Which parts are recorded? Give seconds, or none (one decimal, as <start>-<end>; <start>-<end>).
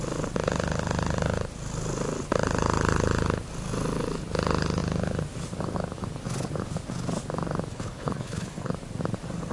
0.0-7.7; 8.7-9.5